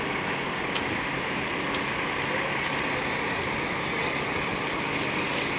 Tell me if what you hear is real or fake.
real